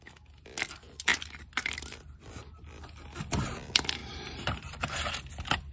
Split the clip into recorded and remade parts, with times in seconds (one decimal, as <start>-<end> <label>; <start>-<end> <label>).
0.0-4.0 recorded; 4.0-5.1 remade; 5.1-5.7 recorded